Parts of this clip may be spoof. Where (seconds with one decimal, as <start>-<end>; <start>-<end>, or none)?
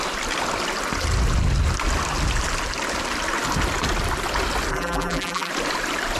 4.7-5.5